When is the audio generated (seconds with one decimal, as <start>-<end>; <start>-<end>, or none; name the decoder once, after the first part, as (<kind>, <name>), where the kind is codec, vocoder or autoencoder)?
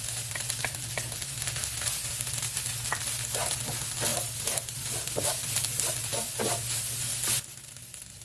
4.1-5.1 (vocoder, BigVGAN v2)